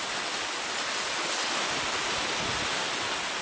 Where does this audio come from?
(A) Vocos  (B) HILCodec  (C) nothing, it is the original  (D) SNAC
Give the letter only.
C